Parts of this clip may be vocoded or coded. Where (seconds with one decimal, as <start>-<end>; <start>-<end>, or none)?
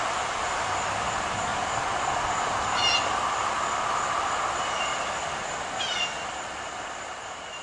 none